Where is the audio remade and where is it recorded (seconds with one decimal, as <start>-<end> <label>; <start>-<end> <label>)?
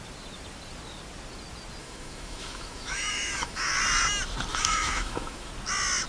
0.0-1.8 recorded; 1.8-3.7 remade; 3.7-4.5 recorded; 4.5-5.5 remade; 5.5-6.1 recorded